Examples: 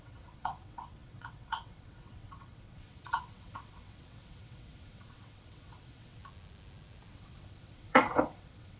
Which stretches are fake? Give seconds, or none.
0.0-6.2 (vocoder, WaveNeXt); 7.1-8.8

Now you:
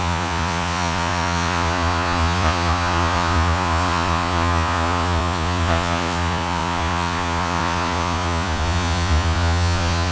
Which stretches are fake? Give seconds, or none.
0.0-10.1 (vocoder, Vocos)